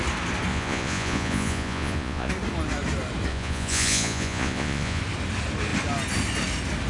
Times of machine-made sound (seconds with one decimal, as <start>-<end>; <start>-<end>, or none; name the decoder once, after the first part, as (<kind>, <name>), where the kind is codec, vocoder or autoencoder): 0.5-2.3 (vocoder, Vocos); 3.3-5.0